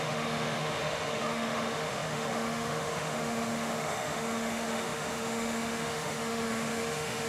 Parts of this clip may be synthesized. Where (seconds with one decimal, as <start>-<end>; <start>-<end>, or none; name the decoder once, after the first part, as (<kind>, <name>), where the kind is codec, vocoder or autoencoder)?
0.0-7.3 (autoencoder, DAC-VAE)